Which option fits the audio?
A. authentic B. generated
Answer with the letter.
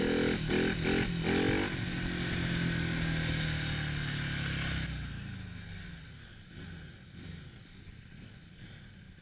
A